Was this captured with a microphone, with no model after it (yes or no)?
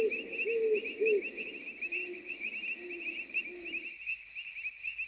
yes